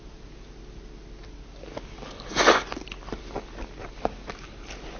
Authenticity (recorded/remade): recorded